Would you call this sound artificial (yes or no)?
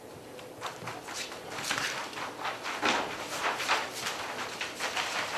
no